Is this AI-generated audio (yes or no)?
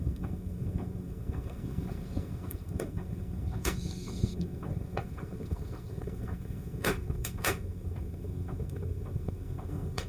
yes